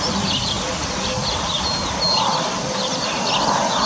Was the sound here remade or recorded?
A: recorded